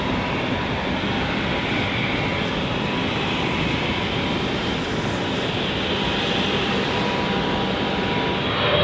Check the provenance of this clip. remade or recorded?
recorded